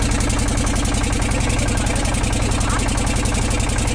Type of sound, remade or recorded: recorded